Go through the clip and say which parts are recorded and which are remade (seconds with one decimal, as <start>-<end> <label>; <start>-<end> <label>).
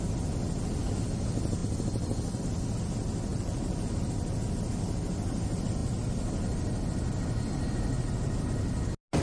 0.0-3.3 recorded; 3.3-4.1 remade; 4.1-9.2 recorded